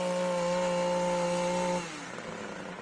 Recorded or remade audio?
recorded